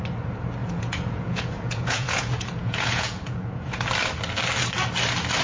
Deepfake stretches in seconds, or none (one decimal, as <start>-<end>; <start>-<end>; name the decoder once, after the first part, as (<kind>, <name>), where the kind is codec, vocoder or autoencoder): 0.6-3.8 (vocoder, Vocos)